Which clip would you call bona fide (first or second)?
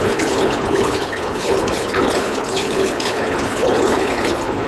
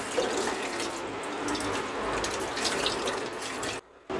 second